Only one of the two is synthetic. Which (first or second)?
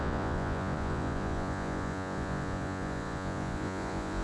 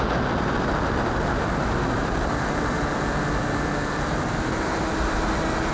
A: first